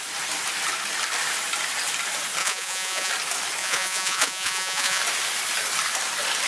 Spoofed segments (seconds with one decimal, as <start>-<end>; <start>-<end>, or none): 2.4-3.1; 3.6-5.0